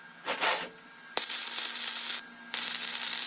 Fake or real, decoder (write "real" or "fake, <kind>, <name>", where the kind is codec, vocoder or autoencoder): real